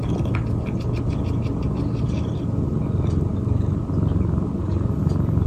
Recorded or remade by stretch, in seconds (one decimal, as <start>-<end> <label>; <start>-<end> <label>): 0.0-5.5 recorded